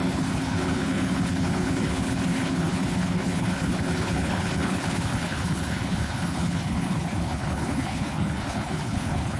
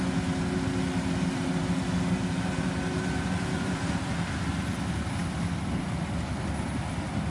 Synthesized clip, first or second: first